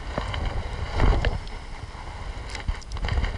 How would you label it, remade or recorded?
recorded